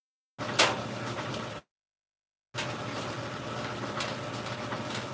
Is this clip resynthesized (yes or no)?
no